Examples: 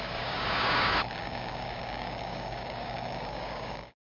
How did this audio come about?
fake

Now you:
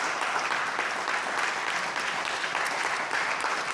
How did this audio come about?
real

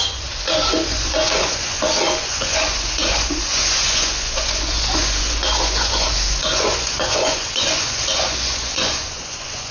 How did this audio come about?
fake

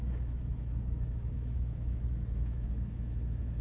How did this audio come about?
fake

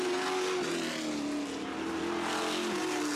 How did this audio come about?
real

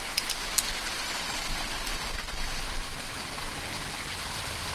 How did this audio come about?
real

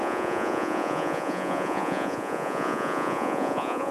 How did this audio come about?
fake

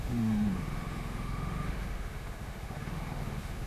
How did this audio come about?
fake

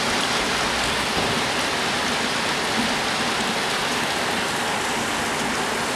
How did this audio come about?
real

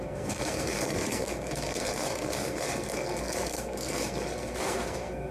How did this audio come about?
fake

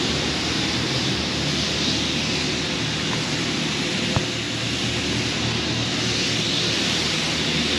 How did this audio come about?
real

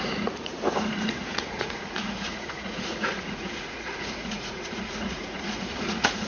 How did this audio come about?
fake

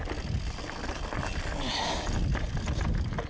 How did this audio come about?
real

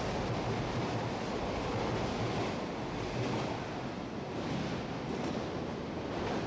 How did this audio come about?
real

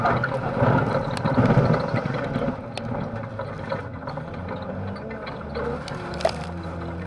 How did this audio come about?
real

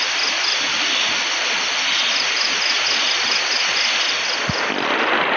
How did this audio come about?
real